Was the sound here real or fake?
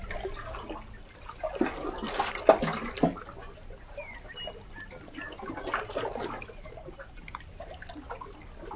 real